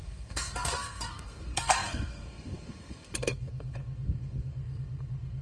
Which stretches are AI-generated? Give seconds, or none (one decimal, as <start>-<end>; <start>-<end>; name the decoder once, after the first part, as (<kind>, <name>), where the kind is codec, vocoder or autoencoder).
0.0-5.4 (codec, SNAC)